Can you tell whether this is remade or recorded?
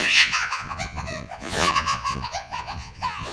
remade